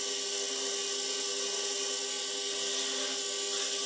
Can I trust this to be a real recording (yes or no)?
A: yes